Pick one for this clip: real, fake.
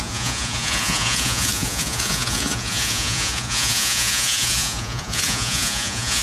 fake